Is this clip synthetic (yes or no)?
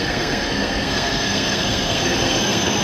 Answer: yes